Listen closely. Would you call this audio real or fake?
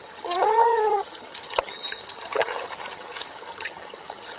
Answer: fake